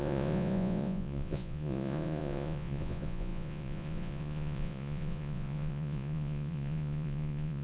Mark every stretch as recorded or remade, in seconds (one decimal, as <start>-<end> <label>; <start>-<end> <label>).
0.0-7.6 remade